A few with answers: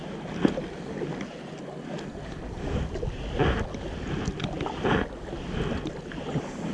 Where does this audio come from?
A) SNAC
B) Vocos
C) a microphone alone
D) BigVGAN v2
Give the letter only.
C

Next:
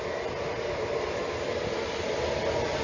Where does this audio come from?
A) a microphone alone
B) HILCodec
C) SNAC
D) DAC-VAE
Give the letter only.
A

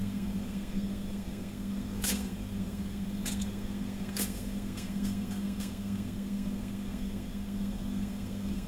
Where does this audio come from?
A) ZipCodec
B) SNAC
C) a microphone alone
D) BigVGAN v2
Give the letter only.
B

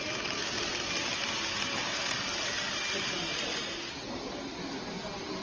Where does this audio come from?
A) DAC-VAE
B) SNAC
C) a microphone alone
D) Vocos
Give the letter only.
C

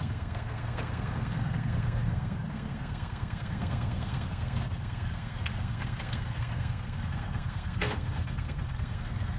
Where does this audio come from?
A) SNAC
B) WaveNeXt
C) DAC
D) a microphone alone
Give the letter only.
A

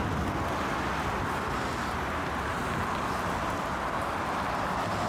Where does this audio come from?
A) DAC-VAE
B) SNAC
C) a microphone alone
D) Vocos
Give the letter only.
C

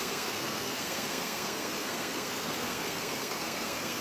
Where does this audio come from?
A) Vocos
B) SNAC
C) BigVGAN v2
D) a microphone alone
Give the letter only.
B